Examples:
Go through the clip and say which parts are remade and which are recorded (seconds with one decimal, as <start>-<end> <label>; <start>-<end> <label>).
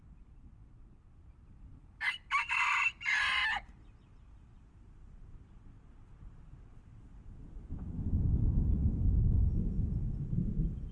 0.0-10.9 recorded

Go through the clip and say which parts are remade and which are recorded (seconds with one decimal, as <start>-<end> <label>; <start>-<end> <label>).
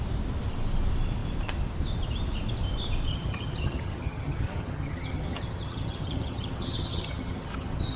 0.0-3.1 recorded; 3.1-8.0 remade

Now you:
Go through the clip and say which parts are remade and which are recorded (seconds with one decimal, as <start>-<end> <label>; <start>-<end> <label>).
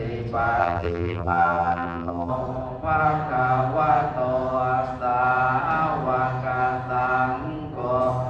0.0-0.6 recorded; 0.6-2.3 remade; 2.3-8.3 recorded